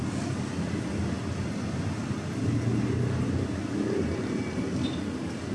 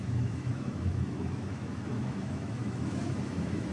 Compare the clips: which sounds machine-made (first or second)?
second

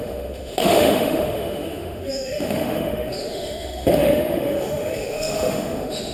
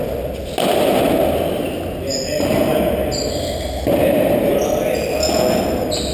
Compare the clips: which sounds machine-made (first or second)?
first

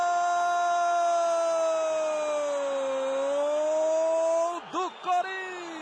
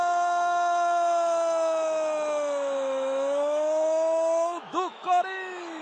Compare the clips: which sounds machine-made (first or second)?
second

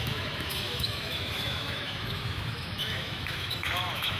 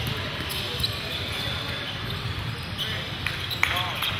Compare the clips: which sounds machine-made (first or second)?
first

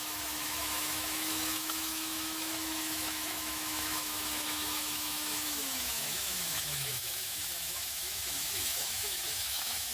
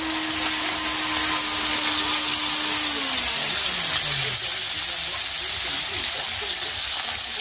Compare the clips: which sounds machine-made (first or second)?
first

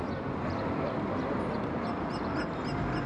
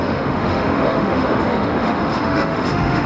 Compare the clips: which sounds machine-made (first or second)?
second